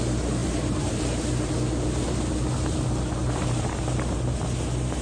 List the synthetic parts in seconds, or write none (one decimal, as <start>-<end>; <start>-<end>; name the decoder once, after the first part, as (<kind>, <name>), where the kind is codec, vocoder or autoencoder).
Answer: 0.4-1.5 (vocoder, BigVGAN v2); 3.2-3.7